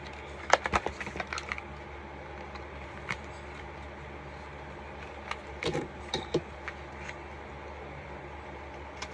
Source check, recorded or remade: recorded